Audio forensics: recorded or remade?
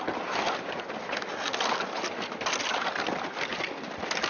recorded